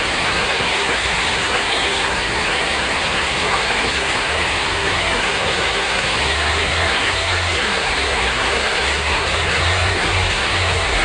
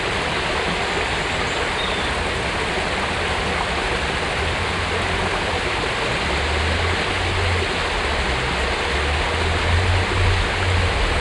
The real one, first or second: second